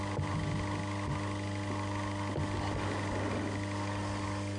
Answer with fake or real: real